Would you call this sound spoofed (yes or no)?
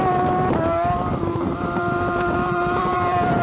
yes